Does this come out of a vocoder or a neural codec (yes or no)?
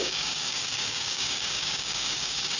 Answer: yes